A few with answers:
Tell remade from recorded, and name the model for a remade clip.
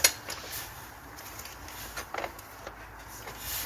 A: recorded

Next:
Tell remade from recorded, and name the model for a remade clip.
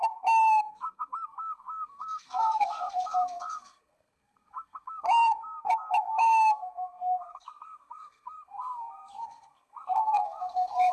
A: remade, codec, SNAC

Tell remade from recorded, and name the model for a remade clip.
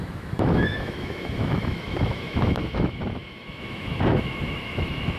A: remade, autoencoder, DAC-VAE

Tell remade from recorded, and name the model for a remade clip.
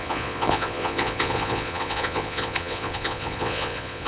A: remade, vocoder, Vocos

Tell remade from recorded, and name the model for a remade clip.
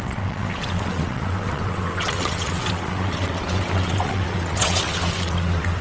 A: remade, vocoder, WaveNeXt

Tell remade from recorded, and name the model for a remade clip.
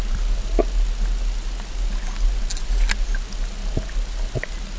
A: recorded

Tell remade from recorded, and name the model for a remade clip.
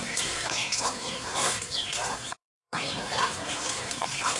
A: remade, codec, SNAC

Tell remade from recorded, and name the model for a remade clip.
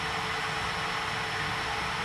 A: recorded